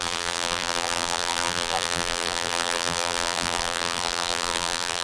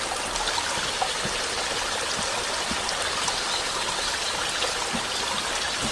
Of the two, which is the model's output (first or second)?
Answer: first